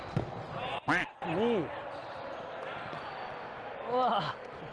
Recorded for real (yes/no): yes